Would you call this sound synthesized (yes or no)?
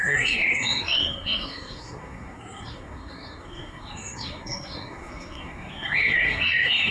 yes